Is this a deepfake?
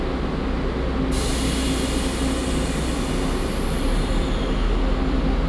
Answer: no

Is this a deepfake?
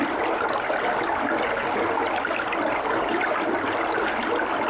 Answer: no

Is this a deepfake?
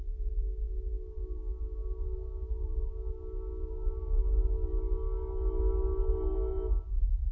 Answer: no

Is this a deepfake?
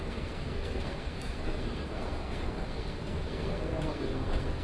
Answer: yes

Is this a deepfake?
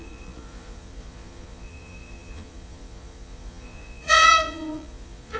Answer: yes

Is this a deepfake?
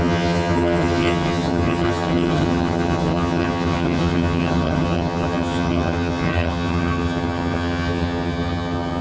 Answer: yes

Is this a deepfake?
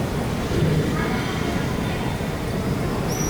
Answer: no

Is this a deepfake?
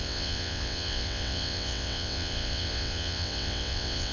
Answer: yes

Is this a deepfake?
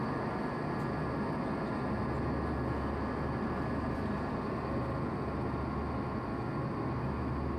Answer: no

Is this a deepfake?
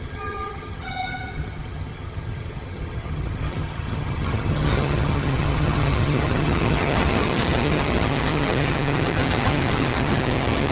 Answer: yes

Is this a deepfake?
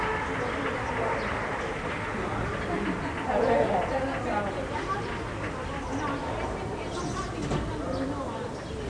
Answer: no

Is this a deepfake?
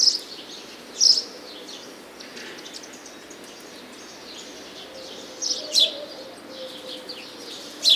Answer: no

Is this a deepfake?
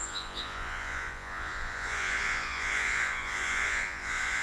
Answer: yes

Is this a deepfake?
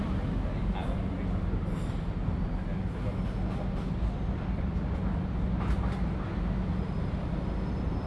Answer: no